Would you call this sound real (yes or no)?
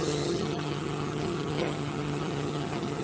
no